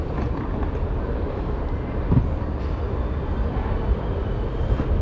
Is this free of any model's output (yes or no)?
no